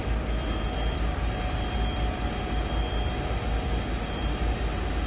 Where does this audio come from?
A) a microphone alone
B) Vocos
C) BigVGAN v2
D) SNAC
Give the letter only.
A